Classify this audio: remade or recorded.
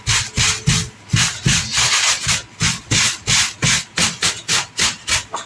recorded